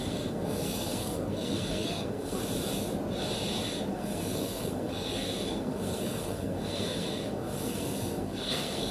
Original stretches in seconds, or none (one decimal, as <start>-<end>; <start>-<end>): 2.4-3.9